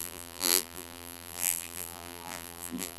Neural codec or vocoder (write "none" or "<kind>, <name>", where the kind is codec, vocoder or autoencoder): vocoder, BigVGAN v2